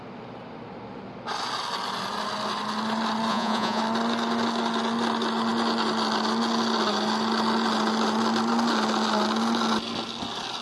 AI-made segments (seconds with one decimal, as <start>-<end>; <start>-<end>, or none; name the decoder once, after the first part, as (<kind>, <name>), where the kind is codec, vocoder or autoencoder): 3.3-3.8 (vocoder, Vocos)